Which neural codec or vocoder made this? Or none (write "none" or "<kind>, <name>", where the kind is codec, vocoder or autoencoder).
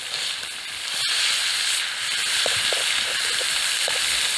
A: none